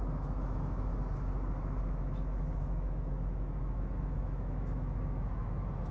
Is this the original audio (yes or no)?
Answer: no